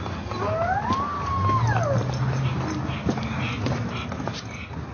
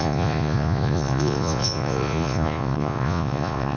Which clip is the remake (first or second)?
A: second